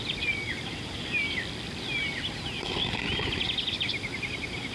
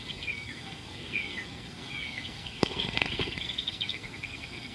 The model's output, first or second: second